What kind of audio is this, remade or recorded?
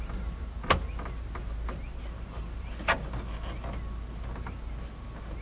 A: recorded